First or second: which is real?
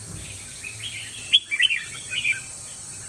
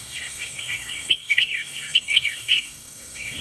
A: first